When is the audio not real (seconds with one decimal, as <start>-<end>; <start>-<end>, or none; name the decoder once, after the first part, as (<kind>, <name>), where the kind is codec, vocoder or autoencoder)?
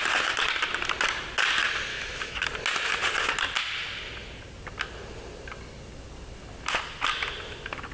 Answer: 1.9-2.4 (autoencoder, DAC-VAE)